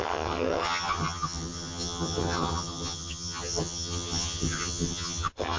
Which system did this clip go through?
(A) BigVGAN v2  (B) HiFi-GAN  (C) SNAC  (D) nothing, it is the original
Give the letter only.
B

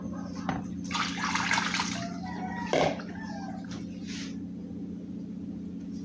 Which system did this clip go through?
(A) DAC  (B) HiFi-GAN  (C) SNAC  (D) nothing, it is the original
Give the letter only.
D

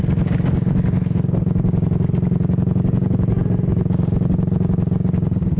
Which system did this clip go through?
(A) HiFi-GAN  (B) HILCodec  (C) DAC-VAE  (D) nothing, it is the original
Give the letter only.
D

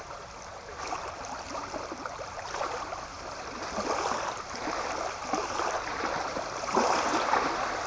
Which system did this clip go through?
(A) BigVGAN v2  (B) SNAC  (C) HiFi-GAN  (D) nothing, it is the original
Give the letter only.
D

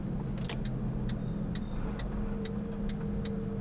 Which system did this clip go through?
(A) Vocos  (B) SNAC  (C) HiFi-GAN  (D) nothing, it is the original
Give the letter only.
D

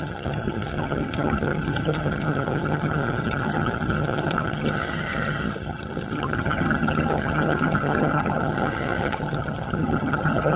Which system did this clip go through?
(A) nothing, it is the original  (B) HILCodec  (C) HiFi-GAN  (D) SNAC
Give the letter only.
C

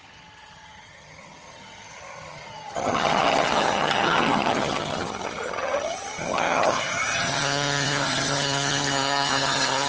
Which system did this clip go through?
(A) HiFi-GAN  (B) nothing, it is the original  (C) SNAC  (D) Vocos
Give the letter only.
A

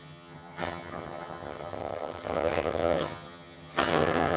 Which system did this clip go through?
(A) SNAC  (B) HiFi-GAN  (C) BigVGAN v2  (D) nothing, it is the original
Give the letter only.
B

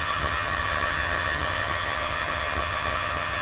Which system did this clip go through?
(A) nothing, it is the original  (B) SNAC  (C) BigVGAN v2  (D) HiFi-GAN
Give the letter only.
D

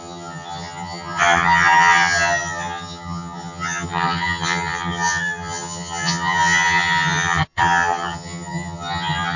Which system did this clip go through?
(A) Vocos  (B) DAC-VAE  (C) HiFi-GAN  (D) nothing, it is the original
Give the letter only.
C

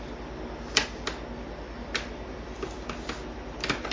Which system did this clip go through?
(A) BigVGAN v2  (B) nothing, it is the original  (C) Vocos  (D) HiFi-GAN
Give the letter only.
B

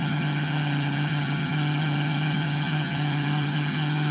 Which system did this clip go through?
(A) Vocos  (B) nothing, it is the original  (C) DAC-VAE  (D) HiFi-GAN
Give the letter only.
D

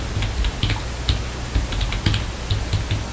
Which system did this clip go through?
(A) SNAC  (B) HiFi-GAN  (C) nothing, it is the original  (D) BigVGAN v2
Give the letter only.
C